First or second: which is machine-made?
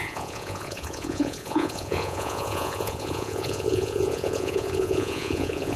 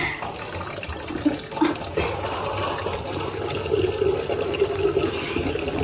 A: first